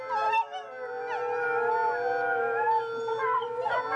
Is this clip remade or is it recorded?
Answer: recorded